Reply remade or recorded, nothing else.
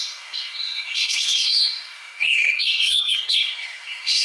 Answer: remade